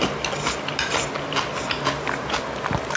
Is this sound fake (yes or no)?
no